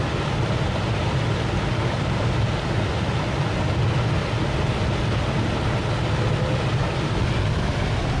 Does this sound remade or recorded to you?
recorded